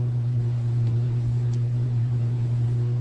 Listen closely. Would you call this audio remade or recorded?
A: remade